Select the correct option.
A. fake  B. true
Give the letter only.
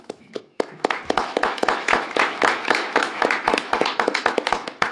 A